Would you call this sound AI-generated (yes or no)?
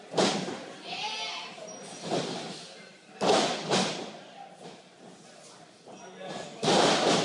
no